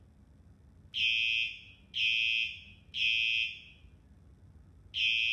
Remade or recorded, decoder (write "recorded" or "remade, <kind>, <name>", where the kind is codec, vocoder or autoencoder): recorded